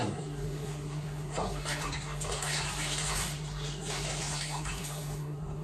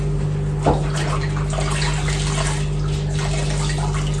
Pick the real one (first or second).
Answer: second